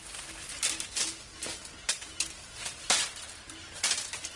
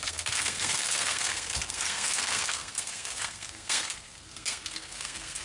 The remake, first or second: second